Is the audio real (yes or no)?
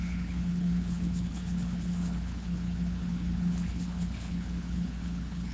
no